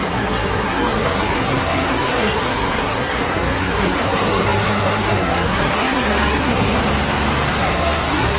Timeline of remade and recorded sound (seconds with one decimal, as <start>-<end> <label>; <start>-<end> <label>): 0.0-6.8 remade; 6.8-7.6 recorded; 7.6-8.4 remade